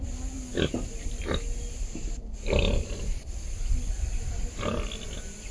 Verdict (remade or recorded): recorded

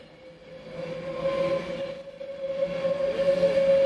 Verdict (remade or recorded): recorded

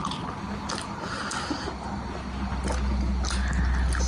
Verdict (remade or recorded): recorded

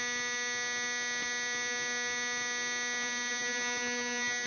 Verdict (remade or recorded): recorded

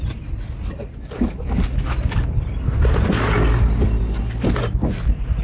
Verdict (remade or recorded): recorded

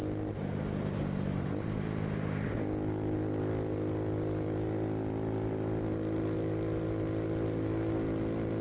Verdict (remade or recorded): recorded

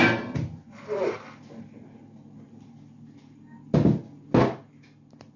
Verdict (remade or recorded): recorded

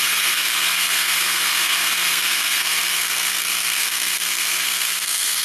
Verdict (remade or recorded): remade